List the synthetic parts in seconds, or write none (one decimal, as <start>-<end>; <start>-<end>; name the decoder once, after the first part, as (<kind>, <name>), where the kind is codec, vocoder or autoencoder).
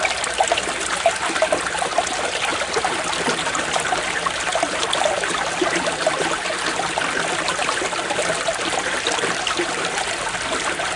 none